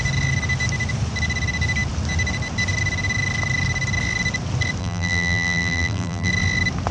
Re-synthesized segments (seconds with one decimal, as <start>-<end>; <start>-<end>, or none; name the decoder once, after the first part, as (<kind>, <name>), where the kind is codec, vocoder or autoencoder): 4.8-6.3 (vocoder, BigVGAN v2)